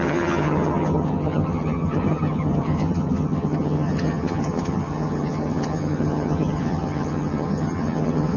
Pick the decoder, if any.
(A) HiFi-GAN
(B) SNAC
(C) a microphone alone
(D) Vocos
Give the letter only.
A